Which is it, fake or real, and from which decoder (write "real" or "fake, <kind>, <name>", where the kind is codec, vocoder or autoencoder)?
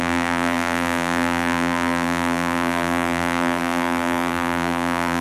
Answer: fake, vocoder, BigVGAN v2